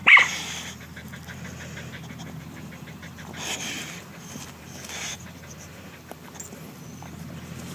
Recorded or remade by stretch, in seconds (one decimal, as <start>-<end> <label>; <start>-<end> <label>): 0.0-2.4 recorded; 2.4-7.7 remade